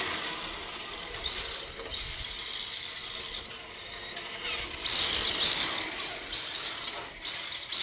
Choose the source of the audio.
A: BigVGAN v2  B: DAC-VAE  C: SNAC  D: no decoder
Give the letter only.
D